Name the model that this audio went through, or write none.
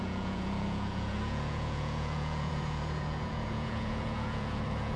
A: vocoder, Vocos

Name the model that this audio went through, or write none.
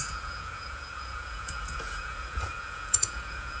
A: vocoder, Vocos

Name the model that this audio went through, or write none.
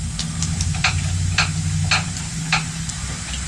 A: none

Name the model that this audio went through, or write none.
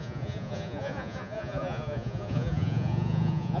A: vocoder, Vocos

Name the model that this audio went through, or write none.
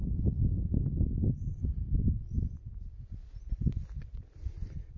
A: none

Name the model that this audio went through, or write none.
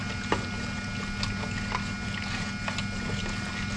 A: none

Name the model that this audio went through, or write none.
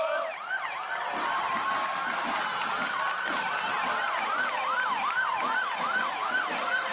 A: none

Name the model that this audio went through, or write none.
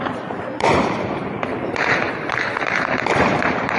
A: vocoder, BigVGAN v2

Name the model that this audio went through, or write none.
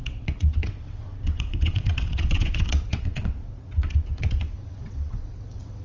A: vocoder, WaveNeXt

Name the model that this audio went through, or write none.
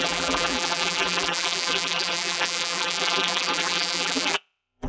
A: vocoder, BigVGAN v2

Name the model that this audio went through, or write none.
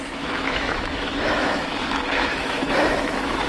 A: autoencoder, DAC-VAE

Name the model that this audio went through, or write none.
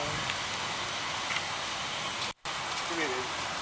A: none